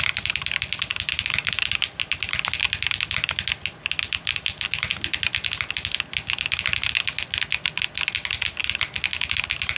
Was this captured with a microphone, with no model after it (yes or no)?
yes